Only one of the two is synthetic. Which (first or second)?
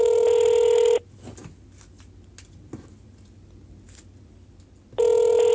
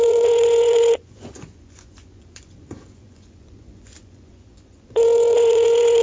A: second